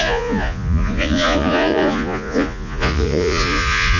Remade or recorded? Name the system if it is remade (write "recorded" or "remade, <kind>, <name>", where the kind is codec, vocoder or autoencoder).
remade, vocoder, Vocos